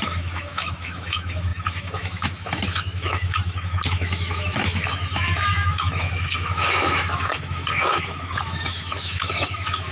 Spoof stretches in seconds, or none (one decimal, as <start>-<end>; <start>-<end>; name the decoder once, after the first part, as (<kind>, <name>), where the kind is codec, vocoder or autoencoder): 0.0-9.9 (autoencoder, DAC-VAE)